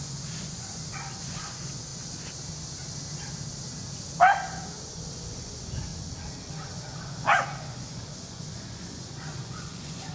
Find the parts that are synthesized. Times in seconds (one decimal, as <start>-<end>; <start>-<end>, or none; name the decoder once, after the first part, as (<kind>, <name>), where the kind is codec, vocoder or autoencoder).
0.0-1.9 (vocoder, Vocos); 4.8-5.9; 6.5-10.1